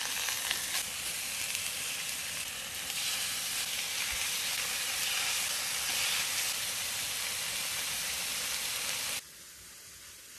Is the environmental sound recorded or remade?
recorded